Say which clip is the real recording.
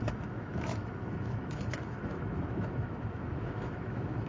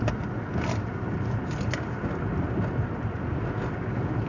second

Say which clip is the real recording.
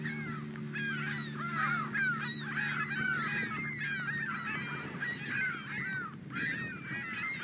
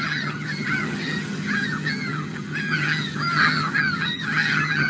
first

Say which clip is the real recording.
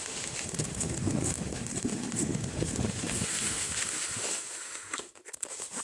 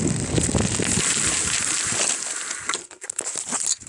second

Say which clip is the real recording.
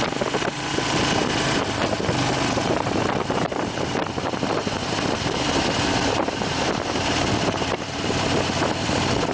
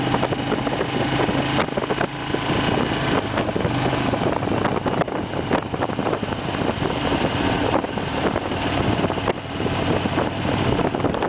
second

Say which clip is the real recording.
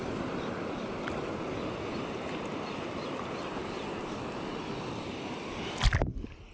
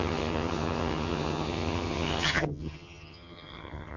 first